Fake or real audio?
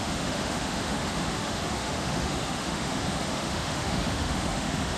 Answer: fake